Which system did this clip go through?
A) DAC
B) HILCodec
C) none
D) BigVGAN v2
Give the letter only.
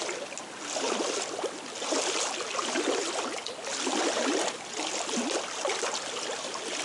C